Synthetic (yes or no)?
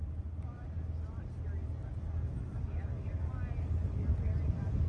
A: no